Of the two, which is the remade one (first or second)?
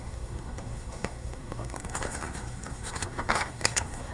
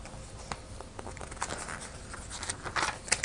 first